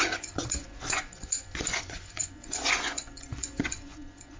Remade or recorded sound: remade